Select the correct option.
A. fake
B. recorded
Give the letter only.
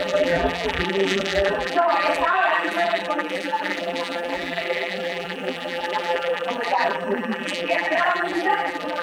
A